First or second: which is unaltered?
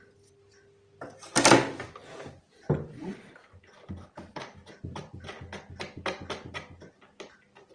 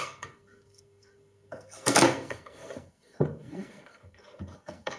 first